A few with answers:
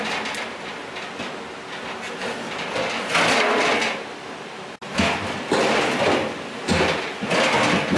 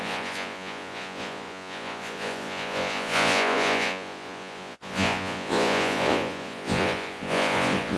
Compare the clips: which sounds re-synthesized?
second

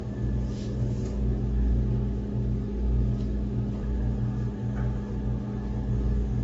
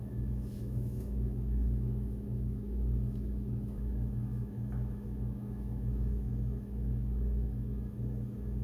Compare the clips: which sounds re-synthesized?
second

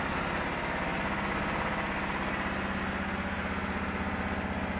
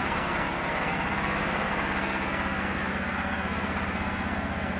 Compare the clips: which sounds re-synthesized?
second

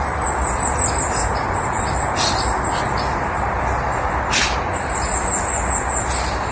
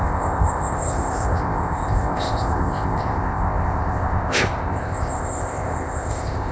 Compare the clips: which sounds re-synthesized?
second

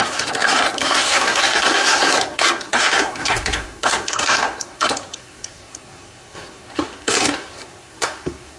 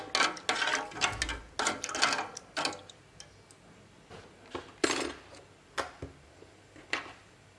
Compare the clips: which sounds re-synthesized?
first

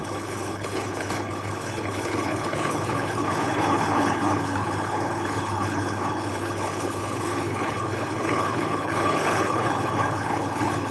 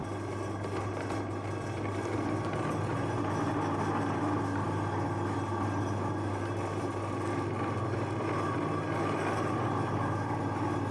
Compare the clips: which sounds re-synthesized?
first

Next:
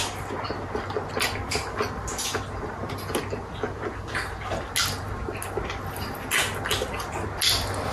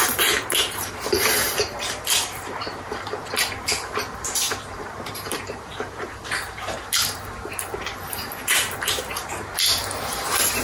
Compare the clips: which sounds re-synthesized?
second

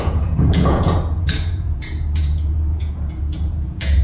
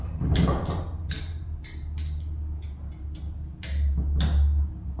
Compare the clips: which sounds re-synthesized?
first